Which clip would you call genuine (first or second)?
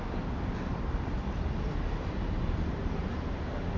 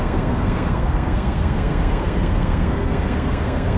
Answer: first